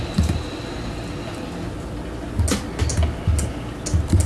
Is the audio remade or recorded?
recorded